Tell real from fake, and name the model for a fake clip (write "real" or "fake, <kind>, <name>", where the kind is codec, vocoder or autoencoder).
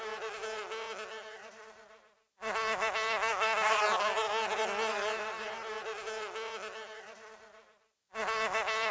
real